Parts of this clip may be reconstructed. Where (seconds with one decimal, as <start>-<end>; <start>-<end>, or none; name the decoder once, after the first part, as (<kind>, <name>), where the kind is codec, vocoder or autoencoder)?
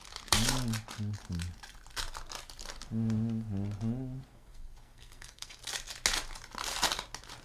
4.3-5.6 (codec, SNAC)